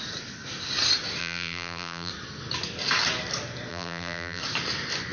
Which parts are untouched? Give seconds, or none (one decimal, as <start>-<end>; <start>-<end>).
0.0-1.2; 2.1-3.7; 4.4-5.1